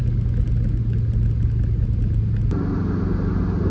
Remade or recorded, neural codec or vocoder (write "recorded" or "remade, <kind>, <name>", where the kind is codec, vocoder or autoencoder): recorded